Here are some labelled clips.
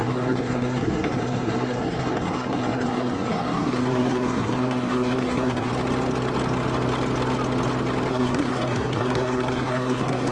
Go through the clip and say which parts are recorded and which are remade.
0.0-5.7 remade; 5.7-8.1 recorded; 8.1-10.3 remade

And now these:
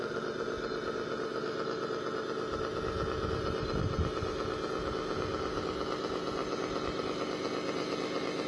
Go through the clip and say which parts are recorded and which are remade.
0.0-8.5 recorded

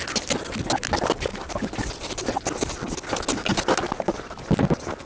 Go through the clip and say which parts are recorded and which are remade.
0.0-5.1 recorded